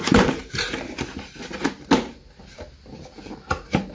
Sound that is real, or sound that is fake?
real